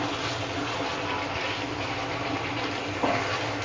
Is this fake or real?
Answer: real